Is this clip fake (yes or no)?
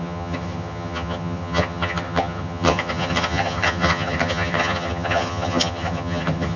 yes